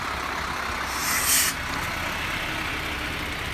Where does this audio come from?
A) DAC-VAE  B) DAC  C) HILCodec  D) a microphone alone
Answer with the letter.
D